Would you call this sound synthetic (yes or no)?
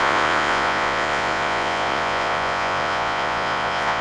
yes